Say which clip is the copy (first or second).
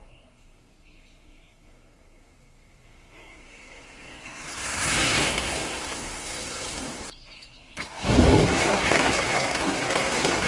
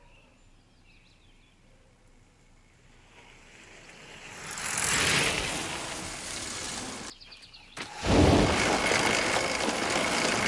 first